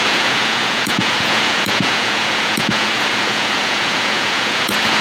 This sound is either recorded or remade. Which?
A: remade